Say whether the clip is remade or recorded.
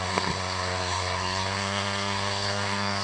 remade